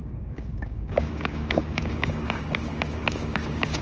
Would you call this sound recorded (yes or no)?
no